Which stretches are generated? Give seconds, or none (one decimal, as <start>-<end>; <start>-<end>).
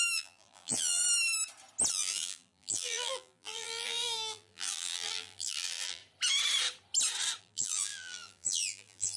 0.0-1.0; 1.9-6.0; 7.4-9.2